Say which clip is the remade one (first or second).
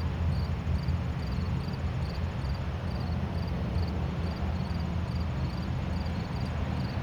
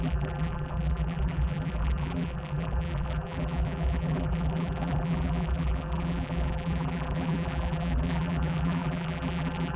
second